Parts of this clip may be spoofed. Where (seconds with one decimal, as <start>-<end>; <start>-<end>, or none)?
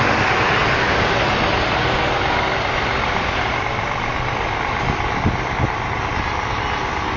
none